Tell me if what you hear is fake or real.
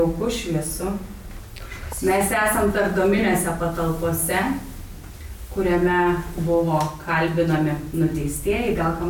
real